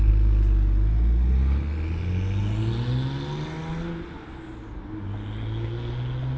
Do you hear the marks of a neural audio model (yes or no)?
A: no